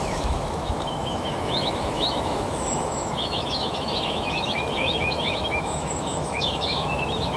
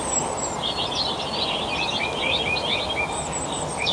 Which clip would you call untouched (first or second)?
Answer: second